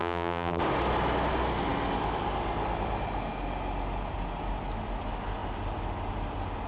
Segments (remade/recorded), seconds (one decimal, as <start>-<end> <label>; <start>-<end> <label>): 0.0-0.6 remade; 0.6-6.7 recorded